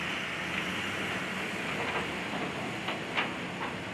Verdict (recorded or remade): recorded